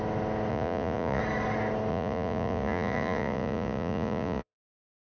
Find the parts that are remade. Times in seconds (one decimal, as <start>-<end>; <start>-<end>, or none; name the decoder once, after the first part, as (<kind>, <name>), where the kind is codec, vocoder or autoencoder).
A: 0.5-1.2 (vocoder, Vocos); 1.9-4.6